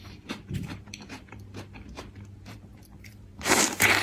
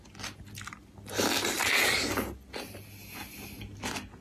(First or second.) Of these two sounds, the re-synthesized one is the first